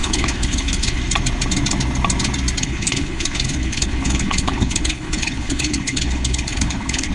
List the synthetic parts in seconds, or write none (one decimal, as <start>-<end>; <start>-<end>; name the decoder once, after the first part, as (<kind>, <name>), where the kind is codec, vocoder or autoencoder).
0.0-1.0 (codec, HILCodec); 2.6-7.1